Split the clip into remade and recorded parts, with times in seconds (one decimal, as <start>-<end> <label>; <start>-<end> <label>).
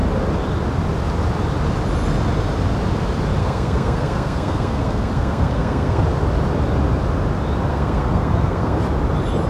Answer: 0.0-3.4 recorded; 3.4-6.0 remade; 6.0-7.7 recorded; 7.7-8.8 remade; 8.8-9.5 recorded